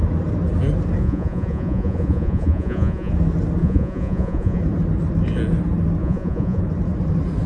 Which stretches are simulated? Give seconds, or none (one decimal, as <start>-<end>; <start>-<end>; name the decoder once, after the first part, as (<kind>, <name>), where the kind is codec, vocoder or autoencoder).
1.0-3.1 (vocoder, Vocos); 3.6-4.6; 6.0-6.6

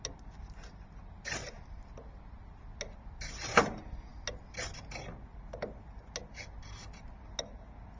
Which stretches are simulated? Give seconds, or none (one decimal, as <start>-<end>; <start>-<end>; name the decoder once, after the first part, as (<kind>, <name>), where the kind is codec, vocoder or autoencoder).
none

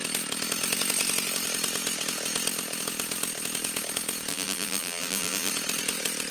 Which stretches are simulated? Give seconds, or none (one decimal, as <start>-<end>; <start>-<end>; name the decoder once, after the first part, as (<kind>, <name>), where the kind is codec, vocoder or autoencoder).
4.3-5.5 (vocoder, BigVGAN v2)